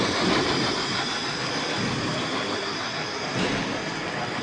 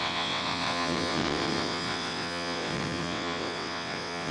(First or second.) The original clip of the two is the first